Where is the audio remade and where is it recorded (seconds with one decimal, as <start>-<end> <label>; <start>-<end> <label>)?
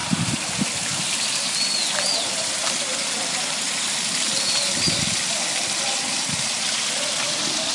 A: 0.0-0.5 remade; 0.5-7.7 recorded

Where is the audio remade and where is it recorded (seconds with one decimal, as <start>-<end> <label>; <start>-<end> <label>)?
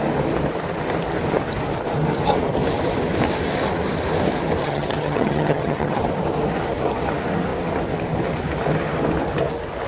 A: 0.0-4.6 recorded; 4.6-6.0 remade; 6.0-9.9 recorded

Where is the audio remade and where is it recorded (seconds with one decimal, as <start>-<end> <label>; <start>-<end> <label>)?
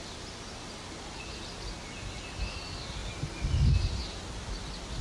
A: 0.0-0.5 remade; 0.5-3.0 recorded; 3.0-3.8 remade; 3.8-5.0 recorded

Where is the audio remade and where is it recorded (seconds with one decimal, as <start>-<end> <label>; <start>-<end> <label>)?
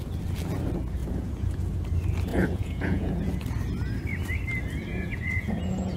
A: 0.0-1.0 recorded; 1.0-1.7 remade; 1.7-2.3 recorded; 2.3-3.4 remade; 3.4-4.9 recorded; 4.9-6.0 remade